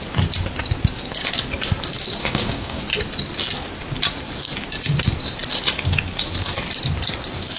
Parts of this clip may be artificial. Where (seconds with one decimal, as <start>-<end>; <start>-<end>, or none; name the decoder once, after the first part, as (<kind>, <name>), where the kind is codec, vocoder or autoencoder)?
2.2-2.8 (codec, DAC)